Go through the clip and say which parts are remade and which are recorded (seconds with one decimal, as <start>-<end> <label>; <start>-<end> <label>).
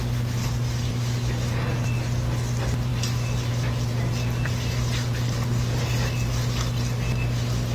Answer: 0.0-7.7 recorded